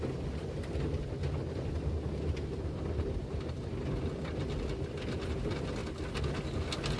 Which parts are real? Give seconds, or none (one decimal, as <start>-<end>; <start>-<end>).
0.0-7.0